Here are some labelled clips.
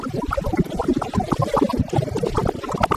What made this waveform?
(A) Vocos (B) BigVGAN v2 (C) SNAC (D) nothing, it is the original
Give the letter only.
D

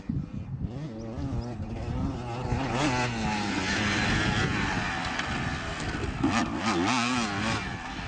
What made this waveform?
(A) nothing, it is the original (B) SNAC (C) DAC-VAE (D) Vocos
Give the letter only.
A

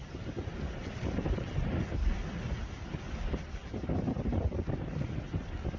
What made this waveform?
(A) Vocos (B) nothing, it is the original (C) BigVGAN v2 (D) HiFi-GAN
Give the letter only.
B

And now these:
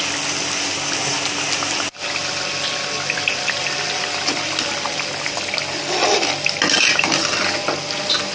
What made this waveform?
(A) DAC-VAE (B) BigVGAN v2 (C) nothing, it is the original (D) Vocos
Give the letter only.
C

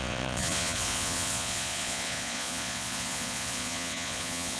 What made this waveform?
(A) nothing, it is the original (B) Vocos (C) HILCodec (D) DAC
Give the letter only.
B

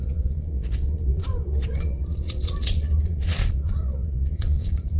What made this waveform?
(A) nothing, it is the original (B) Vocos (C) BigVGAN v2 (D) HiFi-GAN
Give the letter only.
B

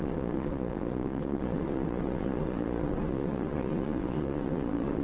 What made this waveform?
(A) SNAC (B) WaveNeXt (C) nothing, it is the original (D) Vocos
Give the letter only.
D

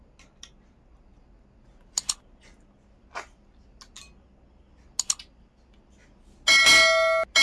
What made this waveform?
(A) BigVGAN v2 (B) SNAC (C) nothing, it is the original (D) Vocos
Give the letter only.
C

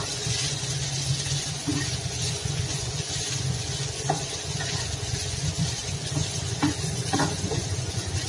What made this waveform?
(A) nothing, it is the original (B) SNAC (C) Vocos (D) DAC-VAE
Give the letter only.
C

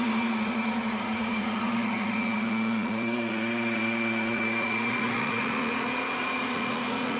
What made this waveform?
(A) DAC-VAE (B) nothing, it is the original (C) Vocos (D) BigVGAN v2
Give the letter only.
C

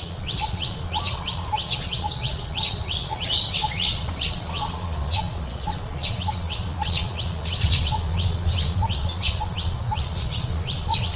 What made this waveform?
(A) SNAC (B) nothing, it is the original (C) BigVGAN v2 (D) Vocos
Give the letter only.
D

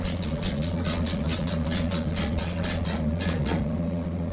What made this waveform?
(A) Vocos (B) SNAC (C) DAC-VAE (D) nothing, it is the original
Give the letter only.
A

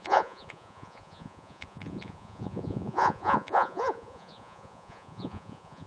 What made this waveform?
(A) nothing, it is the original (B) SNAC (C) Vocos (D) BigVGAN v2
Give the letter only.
C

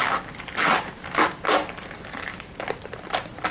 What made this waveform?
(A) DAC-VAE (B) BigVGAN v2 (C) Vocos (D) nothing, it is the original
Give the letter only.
D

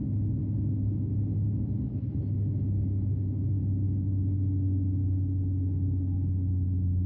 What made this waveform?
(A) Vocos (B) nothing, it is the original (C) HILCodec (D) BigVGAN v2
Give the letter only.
B